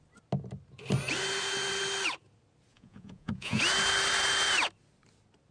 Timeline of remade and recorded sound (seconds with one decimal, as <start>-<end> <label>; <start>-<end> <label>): 0.0-2.7 recorded; 2.7-3.6 remade; 3.6-5.5 recorded